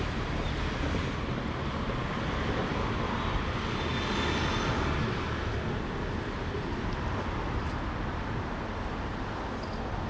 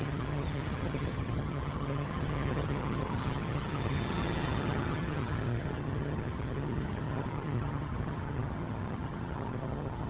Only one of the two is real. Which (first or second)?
first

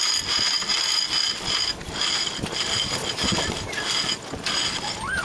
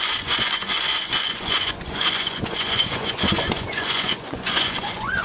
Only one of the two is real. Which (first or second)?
first